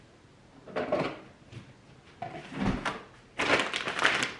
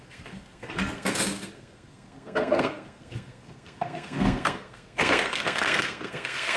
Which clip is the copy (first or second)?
second